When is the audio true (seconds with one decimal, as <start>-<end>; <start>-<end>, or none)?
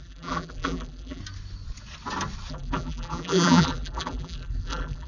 1.2-2.5